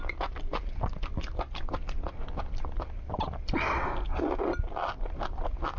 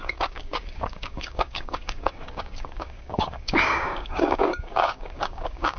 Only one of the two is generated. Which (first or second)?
second